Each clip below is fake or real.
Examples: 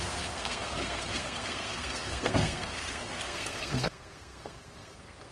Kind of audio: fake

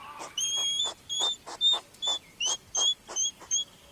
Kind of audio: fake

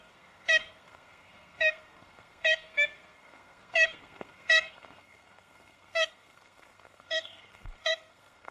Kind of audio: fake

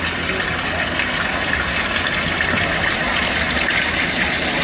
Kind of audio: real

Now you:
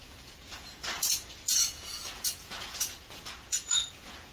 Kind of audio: fake